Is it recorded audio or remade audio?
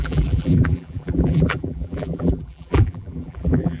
remade